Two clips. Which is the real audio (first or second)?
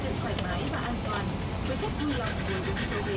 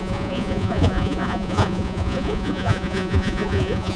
first